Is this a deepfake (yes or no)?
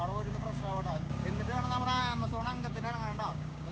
yes